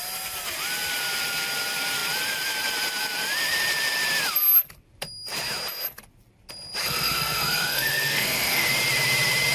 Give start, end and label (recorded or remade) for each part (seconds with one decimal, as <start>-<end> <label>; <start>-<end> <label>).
0.0-6.8 recorded; 6.8-8.7 remade; 8.7-9.5 recorded